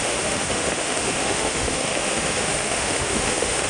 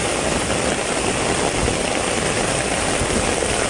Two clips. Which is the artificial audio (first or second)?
first